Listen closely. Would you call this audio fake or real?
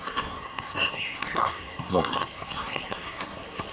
fake